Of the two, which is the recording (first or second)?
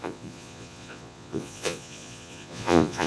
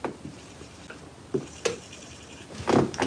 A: second